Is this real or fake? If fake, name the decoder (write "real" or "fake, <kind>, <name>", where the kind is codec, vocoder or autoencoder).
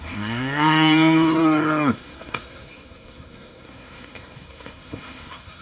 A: fake, codec, SNAC